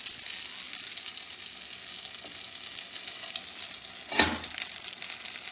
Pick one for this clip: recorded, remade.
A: recorded